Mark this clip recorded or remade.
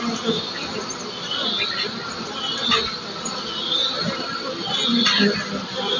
recorded